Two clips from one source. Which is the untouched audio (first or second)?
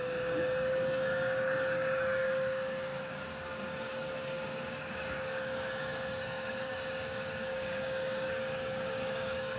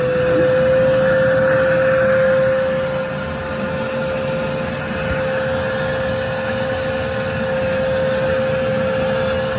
second